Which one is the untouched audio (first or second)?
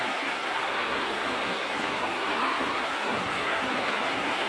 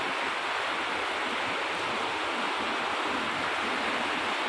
second